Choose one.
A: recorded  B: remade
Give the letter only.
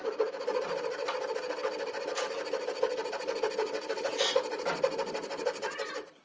A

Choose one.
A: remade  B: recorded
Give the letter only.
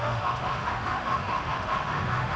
A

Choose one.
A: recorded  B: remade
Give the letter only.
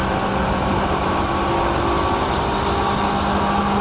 A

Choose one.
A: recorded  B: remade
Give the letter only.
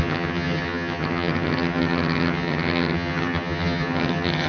B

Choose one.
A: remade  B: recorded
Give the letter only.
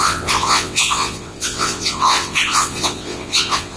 A